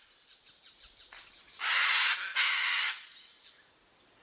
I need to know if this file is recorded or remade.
recorded